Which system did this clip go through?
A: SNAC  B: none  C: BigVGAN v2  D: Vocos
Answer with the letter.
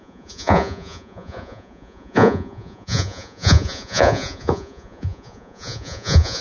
D